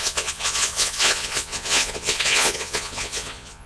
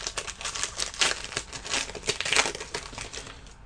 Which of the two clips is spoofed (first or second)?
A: first